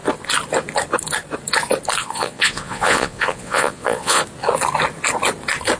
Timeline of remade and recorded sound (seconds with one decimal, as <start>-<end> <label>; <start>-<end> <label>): 0.0-2.0 recorded; 2.0-4.2 remade; 4.2-5.8 recorded